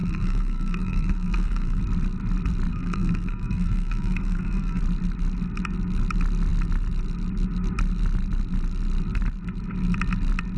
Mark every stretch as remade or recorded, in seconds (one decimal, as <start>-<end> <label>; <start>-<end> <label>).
0.0-1.8 remade; 1.8-2.7 recorded; 2.7-4.8 remade; 4.8-10.6 recorded